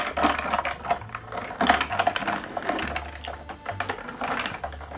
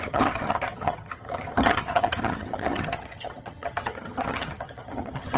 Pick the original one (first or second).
first